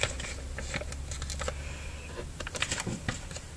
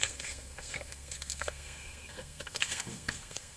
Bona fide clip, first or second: first